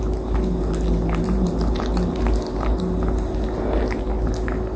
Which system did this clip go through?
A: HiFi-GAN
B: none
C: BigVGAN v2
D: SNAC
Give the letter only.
B